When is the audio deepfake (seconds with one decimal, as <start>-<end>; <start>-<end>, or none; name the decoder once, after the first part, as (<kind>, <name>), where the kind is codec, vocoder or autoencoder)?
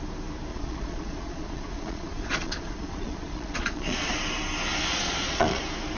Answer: 0.5-4.1 (vocoder, Vocos); 4.9-5.6